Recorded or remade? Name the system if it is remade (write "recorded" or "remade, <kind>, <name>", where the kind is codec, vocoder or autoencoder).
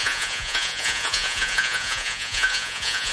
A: remade, vocoder, Vocos